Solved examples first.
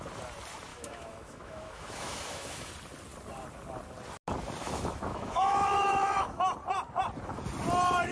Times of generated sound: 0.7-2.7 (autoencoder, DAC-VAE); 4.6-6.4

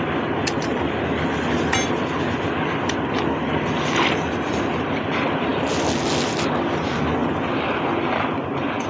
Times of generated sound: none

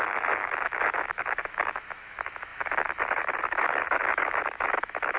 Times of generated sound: 0.0-5.2 (autoencoder, DAC-VAE)

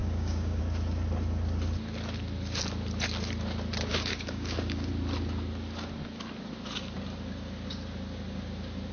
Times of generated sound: 0.0-0.6 (codec, DAC); 3.8-4.9

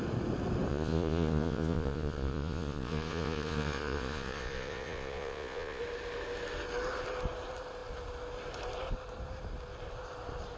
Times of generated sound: 0.7-5.8 (vocoder, Vocos)

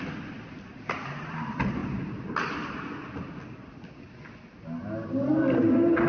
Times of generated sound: none

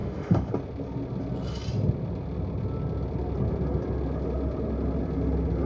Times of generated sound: 0.0-0.5 (autoencoder, DAC-VAE)

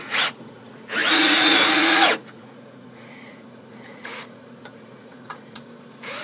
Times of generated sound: 0.0-6.2 (vocoder, Vocos)